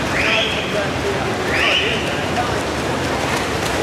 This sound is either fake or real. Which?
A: real